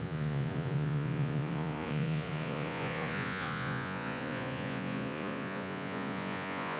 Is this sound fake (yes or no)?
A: yes